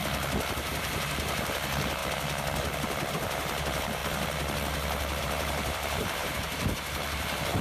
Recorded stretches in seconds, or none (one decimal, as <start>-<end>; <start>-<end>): 0.0-0.5; 2.0-3.1; 4.0-5.2